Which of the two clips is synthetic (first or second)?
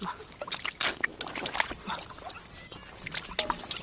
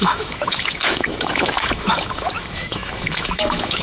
second